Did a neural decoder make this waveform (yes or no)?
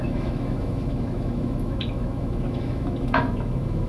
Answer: yes